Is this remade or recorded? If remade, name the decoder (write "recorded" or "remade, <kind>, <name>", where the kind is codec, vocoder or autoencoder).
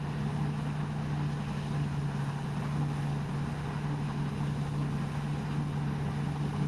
recorded